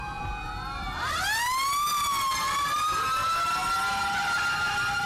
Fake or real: real